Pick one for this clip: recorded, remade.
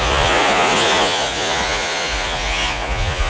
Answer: remade